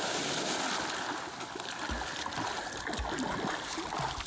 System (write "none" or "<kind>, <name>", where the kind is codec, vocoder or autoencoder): none